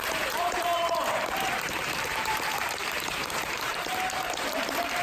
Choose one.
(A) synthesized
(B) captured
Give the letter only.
A